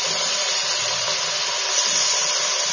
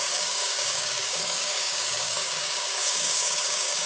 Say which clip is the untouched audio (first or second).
first